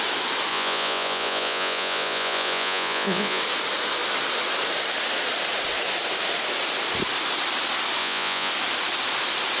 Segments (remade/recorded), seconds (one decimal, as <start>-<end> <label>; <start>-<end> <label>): 0.0-0.5 recorded; 0.5-3.4 remade; 3.4-8.0 recorded; 8.0-8.5 remade; 8.5-9.6 recorded